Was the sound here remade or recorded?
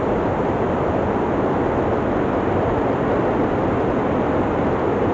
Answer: recorded